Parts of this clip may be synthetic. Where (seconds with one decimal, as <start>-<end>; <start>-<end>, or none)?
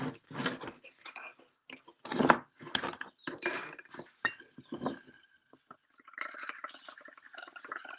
none